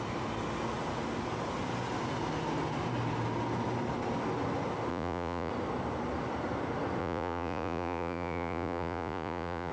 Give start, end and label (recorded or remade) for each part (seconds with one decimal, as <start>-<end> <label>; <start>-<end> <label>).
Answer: 0.0-4.9 recorded; 4.9-5.5 remade; 5.5-7.0 recorded; 7.0-9.7 remade